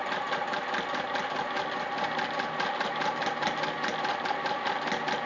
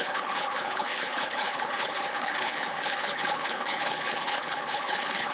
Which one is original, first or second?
first